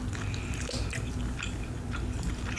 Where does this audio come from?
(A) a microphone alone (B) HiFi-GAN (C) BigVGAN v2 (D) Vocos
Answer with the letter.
A